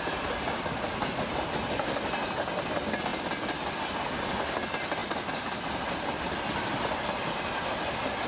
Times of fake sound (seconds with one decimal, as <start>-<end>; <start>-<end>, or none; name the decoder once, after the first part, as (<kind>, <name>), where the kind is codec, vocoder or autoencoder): none